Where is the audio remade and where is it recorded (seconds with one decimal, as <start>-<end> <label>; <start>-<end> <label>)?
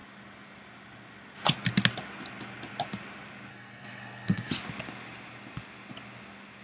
0.0-3.5 recorded; 3.5-4.5 remade; 4.5-6.6 recorded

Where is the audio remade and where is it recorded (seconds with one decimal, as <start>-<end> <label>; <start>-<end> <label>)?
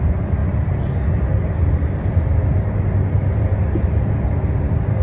0.0-5.0 recorded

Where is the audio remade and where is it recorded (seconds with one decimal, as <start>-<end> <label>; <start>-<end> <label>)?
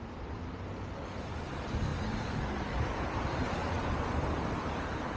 0.0-1.9 recorded; 1.9-4.8 remade; 4.8-5.2 recorded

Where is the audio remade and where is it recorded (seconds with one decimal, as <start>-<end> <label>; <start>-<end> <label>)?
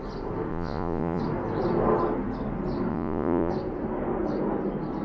0.0-0.5 recorded; 0.5-1.2 remade; 1.2-2.9 recorded; 2.9-3.5 remade; 3.5-5.0 recorded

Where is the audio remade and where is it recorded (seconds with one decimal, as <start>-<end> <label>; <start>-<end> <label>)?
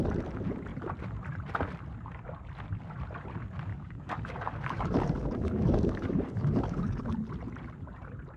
0.0-3.7 recorded; 3.7-7.0 remade; 7.0-8.4 recorded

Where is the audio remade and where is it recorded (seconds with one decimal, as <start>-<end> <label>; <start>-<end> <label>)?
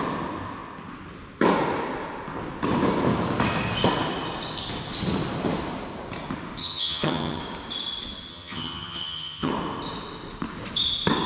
0.0-6.6 recorded; 6.6-7.4 remade; 7.4-8.3 recorded; 8.3-9.5 remade; 9.5-11.3 recorded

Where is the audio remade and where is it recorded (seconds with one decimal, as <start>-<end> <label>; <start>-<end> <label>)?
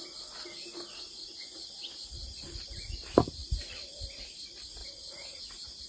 0.0-0.9 recorded; 0.9-1.7 remade; 1.7-4.8 recorded; 4.8-5.4 remade; 5.4-5.9 recorded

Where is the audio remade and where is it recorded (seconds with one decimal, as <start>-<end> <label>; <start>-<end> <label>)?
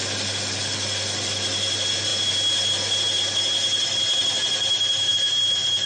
0.0-5.9 recorded